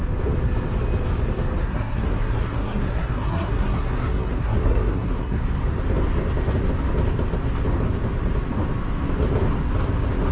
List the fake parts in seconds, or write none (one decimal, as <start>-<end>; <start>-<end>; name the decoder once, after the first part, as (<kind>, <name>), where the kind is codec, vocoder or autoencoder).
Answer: 1.6-5.4 (codec, SNAC)